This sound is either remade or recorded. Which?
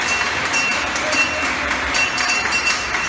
remade